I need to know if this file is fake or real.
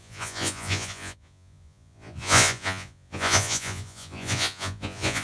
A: fake